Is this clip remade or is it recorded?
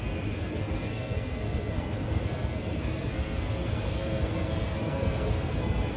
remade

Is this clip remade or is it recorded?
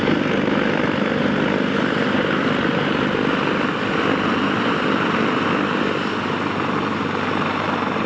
recorded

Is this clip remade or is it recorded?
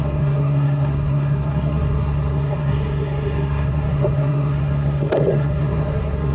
remade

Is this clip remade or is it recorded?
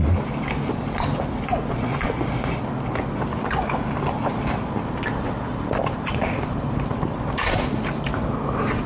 recorded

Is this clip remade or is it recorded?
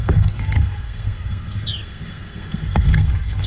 remade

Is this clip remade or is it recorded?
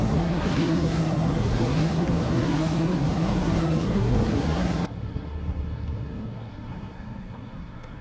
remade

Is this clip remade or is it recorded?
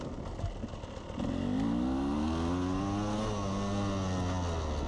recorded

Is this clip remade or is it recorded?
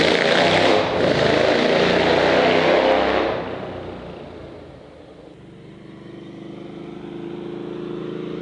recorded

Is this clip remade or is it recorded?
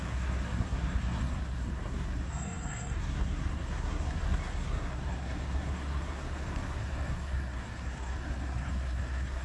remade